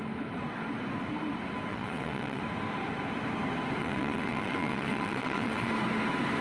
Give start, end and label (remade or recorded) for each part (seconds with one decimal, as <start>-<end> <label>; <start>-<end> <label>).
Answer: 0.0-1.7 recorded; 1.7-2.4 remade; 2.4-3.8 recorded; 3.8-5.7 remade; 5.7-6.4 recorded